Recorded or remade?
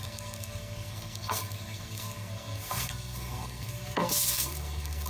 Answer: remade